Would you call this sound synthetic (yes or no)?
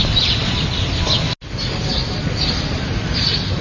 no